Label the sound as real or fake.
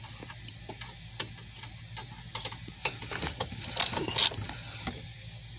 real